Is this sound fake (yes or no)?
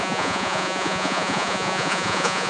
yes